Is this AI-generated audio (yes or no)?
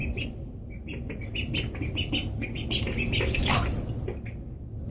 no